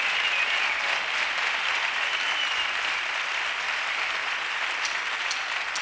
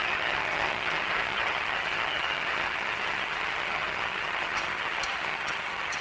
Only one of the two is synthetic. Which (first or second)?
second